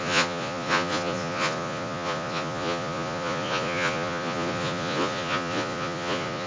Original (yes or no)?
no